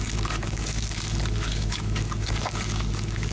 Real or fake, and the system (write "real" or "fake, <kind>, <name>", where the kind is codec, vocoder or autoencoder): fake, codec, DAC